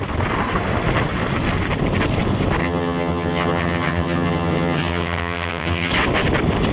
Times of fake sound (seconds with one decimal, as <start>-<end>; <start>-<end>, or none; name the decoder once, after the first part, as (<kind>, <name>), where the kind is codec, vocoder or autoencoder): 2.6-5.9 (vocoder, HiFi-GAN)

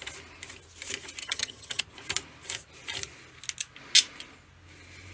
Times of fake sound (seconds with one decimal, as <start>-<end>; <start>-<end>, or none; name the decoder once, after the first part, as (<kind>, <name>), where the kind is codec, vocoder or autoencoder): 1.2-1.8 (vocoder, HiFi-GAN)

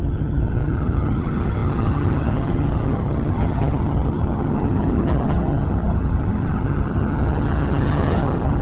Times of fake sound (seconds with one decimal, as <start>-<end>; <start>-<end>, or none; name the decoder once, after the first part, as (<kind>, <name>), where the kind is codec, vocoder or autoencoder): 0.0-8.6 (vocoder, HiFi-GAN)

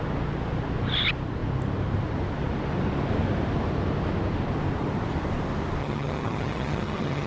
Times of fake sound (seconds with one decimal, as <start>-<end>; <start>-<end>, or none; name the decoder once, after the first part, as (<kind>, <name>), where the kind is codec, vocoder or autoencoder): 5.8-7.3 (vocoder, HiFi-GAN)

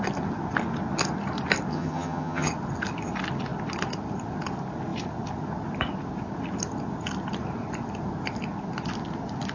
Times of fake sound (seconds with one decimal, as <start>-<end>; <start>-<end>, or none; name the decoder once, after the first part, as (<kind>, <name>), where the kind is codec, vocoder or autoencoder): 1.7-2.5 (vocoder, HiFi-GAN)

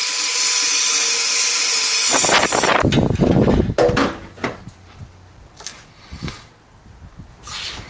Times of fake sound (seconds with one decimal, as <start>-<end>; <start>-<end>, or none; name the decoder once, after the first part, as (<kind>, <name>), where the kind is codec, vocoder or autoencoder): none